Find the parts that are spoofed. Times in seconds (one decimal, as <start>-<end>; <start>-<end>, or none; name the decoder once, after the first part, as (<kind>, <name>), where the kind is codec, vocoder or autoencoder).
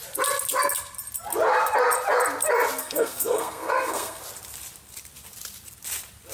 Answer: 2.8-4.2 (codec, SNAC)